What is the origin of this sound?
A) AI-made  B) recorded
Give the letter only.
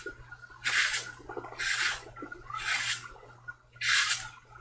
B